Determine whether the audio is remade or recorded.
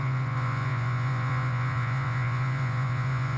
remade